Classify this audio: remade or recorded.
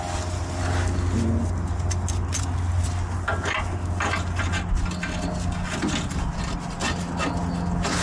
recorded